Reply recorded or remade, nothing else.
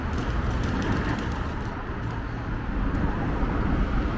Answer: recorded